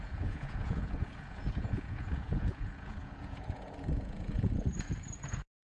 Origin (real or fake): fake